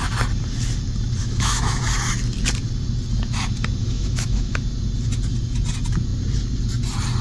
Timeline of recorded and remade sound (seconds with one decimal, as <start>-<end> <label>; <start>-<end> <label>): 0.0-1.2 recorded; 1.2-1.8 remade; 1.8-3.8 recorded; 3.8-4.6 remade; 4.6-7.2 recorded